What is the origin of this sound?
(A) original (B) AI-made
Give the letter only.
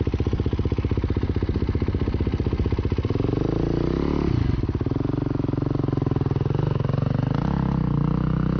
A